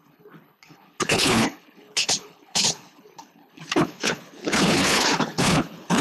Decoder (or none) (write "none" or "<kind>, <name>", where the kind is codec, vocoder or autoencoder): codec, HILCodec